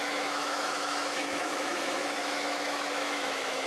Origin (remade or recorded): remade